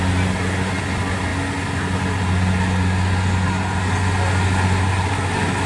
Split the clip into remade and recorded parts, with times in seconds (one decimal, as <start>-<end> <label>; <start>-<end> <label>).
0.0-5.7 recorded